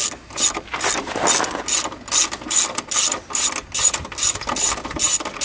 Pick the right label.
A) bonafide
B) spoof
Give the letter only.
A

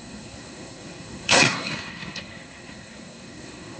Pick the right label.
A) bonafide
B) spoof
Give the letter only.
B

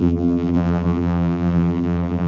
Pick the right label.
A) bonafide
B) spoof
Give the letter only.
B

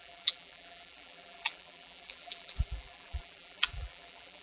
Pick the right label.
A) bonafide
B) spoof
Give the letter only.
B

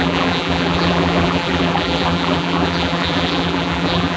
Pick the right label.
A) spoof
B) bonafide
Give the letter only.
A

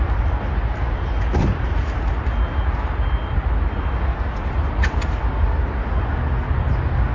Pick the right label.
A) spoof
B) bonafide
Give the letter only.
B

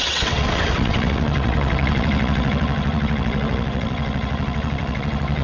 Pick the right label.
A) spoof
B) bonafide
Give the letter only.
A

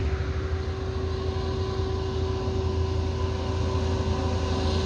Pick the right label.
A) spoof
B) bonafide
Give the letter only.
B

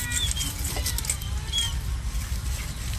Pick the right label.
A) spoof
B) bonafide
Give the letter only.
B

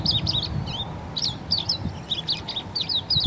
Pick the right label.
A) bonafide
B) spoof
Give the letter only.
A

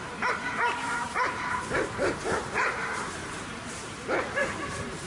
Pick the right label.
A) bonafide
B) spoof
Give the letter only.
B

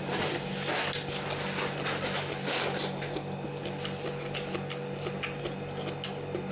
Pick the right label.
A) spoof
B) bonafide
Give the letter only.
B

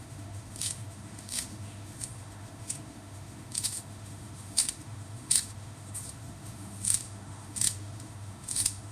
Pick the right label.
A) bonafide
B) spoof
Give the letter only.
B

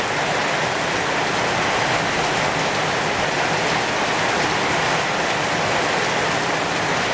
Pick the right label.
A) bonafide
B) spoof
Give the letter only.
A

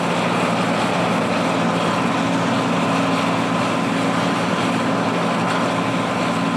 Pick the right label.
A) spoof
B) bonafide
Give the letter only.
B